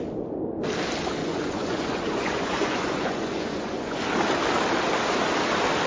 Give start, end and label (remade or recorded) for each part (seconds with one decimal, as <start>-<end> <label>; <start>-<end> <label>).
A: 0.0-1.2 recorded; 1.2-4.0 remade; 4.0-5.9 recorded